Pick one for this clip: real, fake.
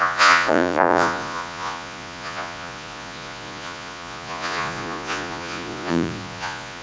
fake